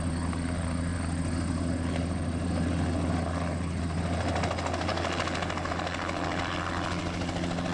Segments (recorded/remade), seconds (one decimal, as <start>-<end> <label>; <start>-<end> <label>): 0.0-7.7 recorded